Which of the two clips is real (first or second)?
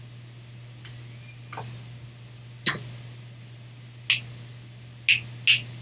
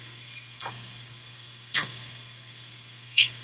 first